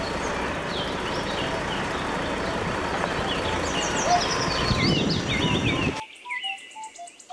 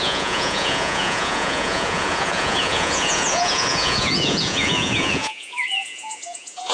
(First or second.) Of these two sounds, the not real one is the second